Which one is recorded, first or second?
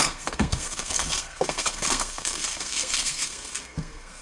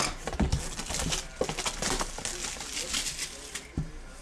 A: second